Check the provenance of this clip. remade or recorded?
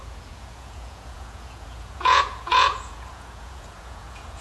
remade